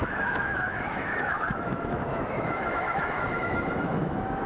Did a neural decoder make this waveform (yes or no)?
yes